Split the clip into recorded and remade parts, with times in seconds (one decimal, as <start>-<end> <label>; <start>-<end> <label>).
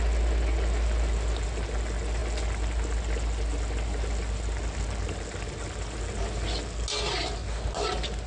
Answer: 0.0-8.3 recorded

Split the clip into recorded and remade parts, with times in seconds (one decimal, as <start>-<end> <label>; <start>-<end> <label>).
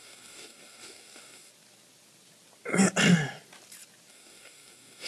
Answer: 0.0-1.5 remade; 1.5-4.1 recorded; 4.1-5.1 remade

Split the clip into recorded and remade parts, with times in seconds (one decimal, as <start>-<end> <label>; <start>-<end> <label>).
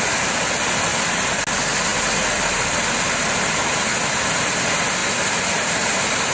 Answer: 0.0-6.3 recorded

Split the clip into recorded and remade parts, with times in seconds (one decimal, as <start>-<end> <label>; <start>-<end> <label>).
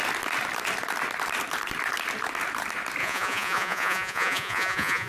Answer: 0.0-3.0 recorded; 3.0-5.1 remade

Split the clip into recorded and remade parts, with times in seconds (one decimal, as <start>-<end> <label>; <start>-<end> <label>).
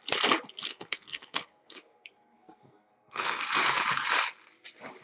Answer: 0.0-0.7 recorded; 0.7-3.4 remade; 3.4-5.0 recorded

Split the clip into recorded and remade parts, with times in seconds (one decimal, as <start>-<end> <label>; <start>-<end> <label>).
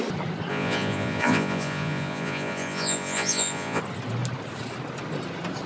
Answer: 0.0-0.5 recorded; 0.5-3.8 remade; 3.8-5.7 recorded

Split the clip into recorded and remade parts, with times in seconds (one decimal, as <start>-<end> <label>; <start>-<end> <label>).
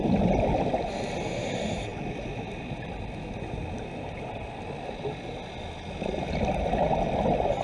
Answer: 0.0-7.6 recorded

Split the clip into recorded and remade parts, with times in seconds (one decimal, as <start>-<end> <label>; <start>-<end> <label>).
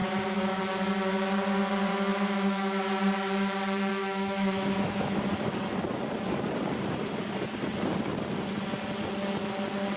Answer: 0.0-0.6 remade; 0.6-1.9 recorded; 1.9-2.8 remade; 2.8-3.9 recorded; 3.9-5.2 remade; 5.2-10.0 recorded